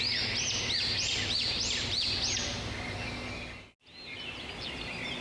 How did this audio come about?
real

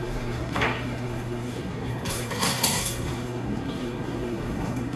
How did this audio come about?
fake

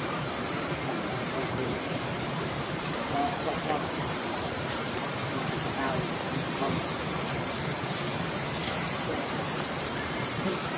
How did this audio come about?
fake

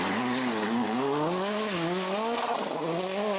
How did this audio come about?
real